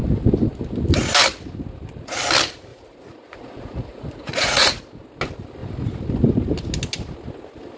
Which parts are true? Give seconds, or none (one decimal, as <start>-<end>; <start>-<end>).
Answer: 0.0-2.7; 4.8-7.8